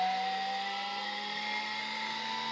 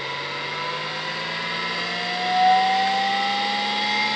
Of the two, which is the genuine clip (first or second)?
second